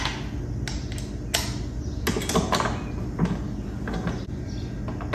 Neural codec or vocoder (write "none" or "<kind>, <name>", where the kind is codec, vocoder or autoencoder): none